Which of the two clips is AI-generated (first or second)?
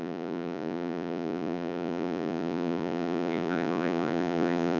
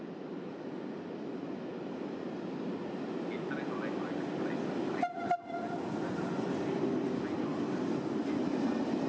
first